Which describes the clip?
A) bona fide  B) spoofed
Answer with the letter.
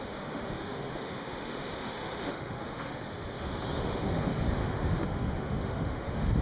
B